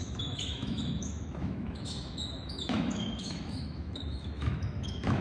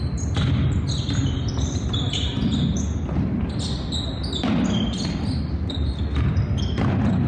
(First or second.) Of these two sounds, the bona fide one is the second